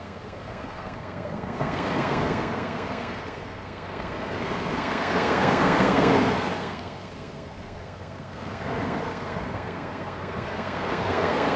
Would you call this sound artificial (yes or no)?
yes